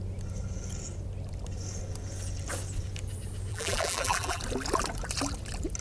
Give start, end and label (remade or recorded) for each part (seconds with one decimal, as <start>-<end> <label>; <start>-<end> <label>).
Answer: 0.0-3.5 recorded; 3.5-4.4 remade; 4.4-5.8 recorded